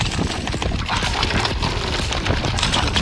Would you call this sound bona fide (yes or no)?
yes